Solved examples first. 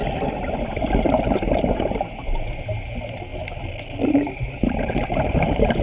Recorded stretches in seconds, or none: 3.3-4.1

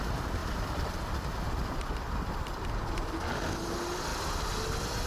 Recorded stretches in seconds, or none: 0.0-0.4; 3.5-5.1

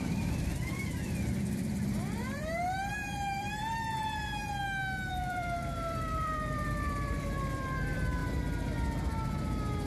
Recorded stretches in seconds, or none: 4.4-5.1; 8.2-9.9

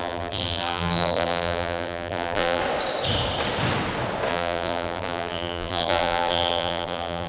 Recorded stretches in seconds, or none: 2.6-4.3

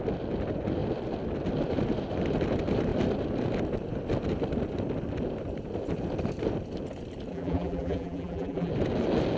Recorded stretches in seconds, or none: 0.0-7.3; 8.7-9.4

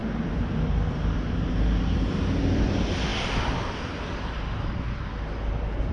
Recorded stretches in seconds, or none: 3.1-4.0

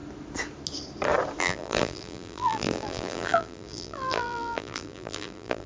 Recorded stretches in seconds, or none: 0.0-1.4

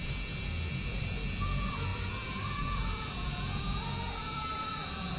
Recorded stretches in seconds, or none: none